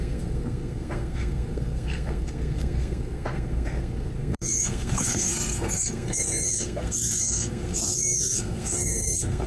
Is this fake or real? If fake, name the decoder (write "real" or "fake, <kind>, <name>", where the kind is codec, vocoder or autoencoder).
fake, codec, SNAC